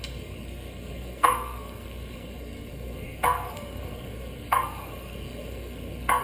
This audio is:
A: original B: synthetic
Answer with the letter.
B